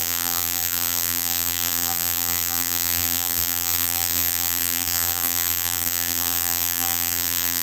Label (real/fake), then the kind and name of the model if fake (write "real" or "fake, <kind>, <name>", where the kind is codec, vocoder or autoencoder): fake, vocoder, BigVGAN v2